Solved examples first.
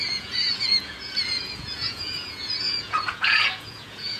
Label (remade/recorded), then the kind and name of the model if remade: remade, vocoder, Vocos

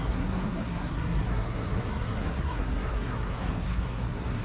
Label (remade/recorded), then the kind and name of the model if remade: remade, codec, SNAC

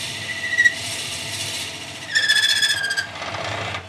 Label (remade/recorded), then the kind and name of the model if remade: recorded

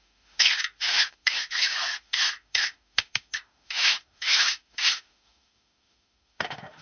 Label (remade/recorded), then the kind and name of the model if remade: remade, autoencoder, DAC-VAE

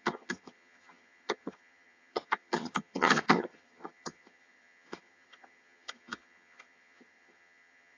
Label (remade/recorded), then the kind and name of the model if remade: remade, vocoder, HiFi-GAN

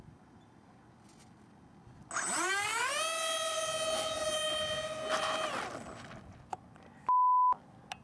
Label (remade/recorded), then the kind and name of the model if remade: recorded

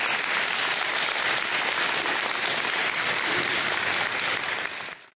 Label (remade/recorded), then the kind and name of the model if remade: recorded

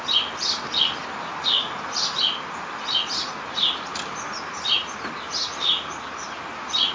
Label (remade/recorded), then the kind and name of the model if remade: recorded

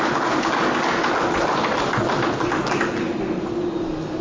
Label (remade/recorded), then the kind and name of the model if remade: recorded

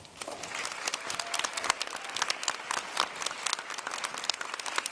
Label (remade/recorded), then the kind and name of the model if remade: recorded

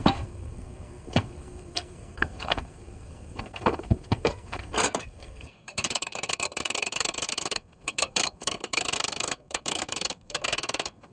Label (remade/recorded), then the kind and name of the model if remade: remade, codec, SNAC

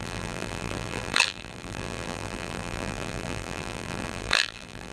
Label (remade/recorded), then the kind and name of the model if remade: remade, vocoder, BigVGAN v2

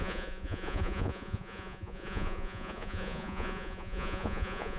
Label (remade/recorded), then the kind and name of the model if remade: remade, vocoder, Vocos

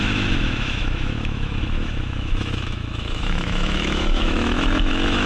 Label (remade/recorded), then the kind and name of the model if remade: remade, autoencoder, DAC-VAE